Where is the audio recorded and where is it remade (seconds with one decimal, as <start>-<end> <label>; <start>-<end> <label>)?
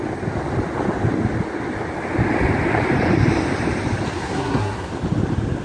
0.0-4.1 recorded; 4.1-4.9 remade; 4.9-5.6 recorded